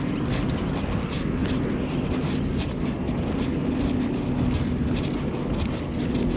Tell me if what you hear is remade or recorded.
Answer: recorded